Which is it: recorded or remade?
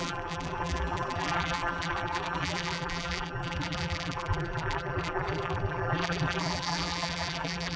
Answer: remade